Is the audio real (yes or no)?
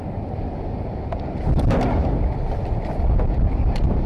yes